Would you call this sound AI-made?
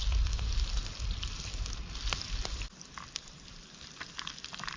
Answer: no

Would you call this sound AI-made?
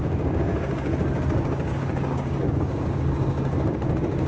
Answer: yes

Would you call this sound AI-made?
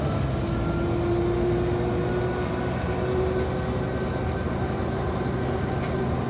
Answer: no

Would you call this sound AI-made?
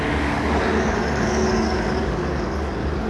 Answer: yes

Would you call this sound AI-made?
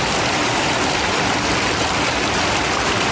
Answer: no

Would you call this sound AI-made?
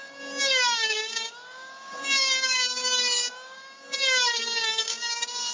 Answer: yes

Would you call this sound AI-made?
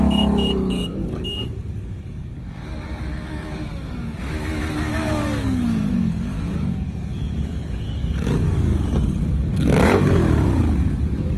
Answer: yes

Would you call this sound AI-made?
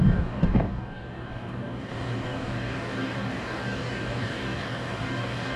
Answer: yes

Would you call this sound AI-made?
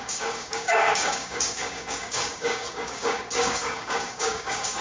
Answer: yes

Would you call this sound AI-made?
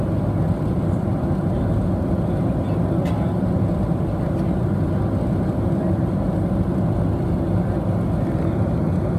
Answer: no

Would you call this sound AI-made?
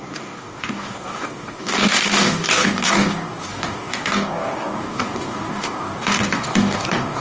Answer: yes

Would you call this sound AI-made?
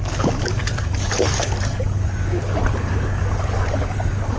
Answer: yes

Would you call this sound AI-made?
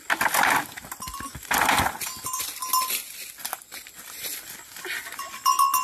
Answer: no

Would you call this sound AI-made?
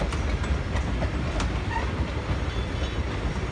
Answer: no